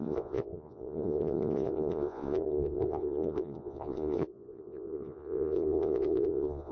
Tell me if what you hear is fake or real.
fake